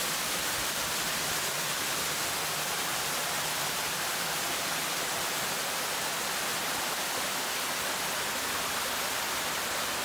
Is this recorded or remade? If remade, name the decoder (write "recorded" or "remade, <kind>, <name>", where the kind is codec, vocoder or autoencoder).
recorded